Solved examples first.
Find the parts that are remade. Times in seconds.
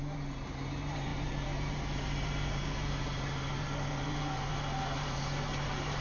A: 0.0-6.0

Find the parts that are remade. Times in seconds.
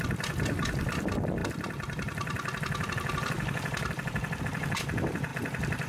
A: 0.0-5.9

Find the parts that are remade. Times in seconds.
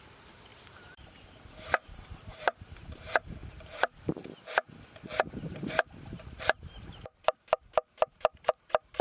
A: 0.0-3.4; 5.3-9.0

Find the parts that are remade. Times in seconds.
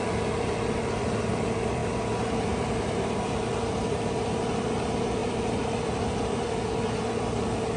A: 0.0-1.8; 2.5-7.8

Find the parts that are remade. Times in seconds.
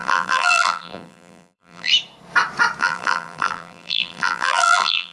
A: 0.0-1.9; 2.8-5.1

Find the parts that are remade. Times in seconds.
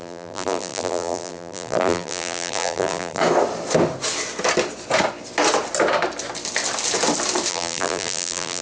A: 0.0-3.2; 7.5-8.6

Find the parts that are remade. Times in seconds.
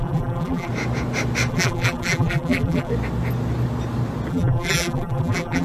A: 0.0-0.7; 1.5-2.9; 4.3-5.6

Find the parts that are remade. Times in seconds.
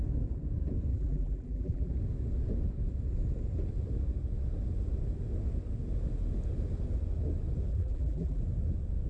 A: 0.9-1.9; 7.7-8.4